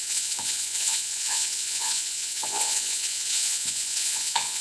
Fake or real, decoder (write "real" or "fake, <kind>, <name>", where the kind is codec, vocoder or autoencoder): fake, vocoder, Vocos